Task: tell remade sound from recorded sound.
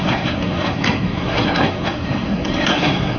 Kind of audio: remade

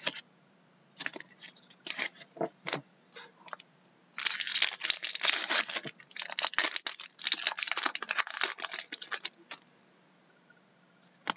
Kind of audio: recorded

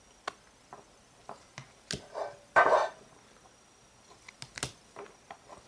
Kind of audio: recorded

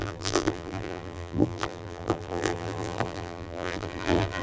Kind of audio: remade